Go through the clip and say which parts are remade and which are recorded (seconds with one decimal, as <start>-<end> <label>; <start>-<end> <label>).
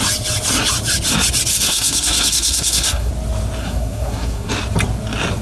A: 0.0-1.5 recorded; 1.5-3.1 remade; 3.1-3.6 recorded; 3.6-4.5 remade; 4.5-5.4 recorded